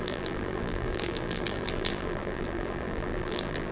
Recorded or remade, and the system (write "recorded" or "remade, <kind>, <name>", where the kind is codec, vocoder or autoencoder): remade, vocoder, BigVGAN v2